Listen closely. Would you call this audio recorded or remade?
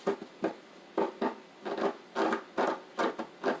recorded